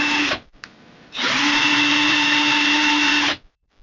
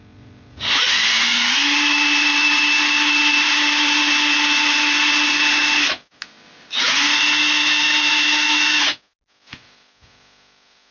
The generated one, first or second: first